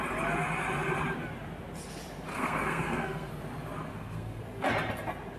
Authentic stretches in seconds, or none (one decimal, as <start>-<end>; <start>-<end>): 0.0-2.3; 3.3-3.9; 4.4-5.4